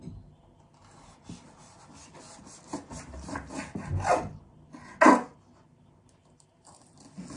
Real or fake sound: real